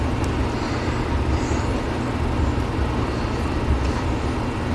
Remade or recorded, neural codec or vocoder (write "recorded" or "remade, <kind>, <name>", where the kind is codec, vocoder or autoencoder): recorded